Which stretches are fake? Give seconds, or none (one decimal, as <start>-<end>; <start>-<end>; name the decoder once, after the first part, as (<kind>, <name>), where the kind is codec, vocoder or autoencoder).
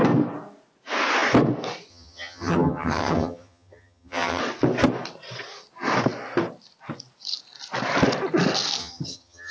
1.9-4.4 (vocoder, HiFi-GAN); 8.8-9.5